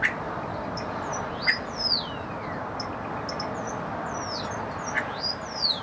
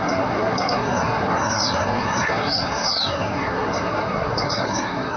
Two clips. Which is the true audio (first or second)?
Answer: first